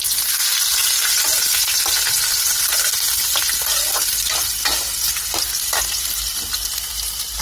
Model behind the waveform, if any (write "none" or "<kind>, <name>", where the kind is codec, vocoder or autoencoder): none